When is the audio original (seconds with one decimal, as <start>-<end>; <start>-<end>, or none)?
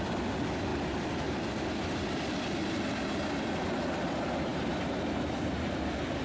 0.0-6.2